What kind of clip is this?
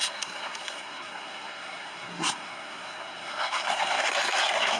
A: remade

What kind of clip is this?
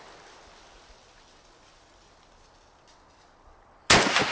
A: recorded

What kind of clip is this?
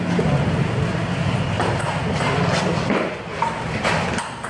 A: recorded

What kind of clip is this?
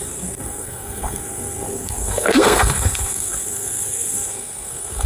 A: remade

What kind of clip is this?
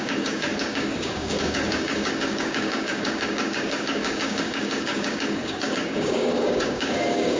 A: remade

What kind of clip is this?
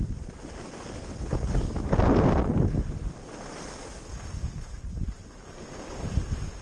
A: recorded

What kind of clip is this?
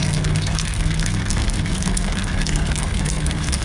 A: remade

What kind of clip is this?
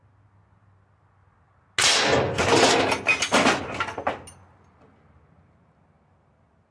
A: recorded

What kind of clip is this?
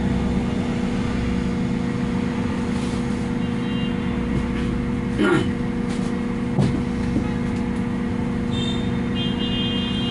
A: recorded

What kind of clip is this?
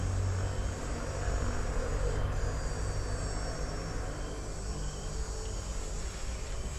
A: recorded